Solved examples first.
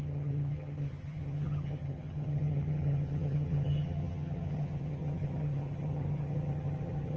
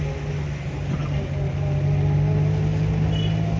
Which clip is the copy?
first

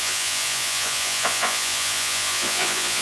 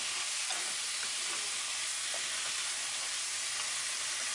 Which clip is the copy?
first